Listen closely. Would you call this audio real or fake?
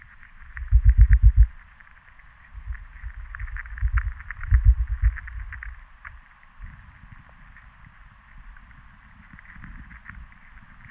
real